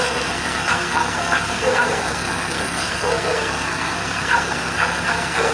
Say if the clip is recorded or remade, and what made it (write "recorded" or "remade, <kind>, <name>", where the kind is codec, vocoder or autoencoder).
remade, codec, SNAC